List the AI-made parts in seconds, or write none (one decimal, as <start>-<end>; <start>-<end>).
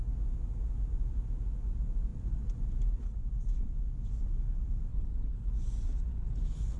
4.9-5.5; 6.1-6.8